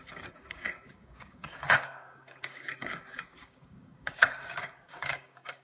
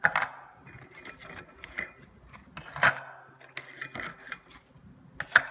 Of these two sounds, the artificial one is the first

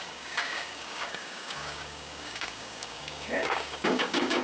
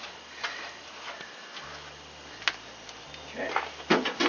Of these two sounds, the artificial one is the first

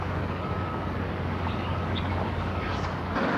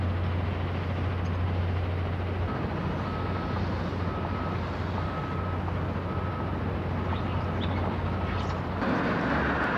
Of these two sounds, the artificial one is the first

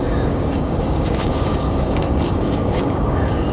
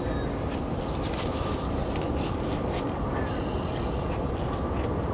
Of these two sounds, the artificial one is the first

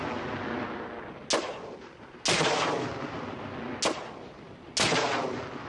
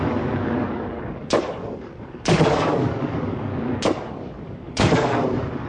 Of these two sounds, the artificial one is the second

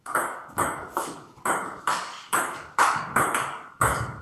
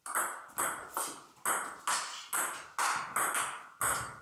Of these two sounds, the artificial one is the first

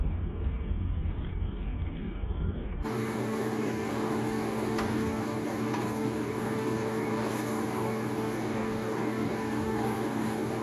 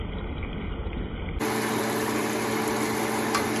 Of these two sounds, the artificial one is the first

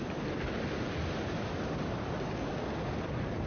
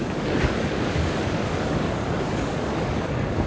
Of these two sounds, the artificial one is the second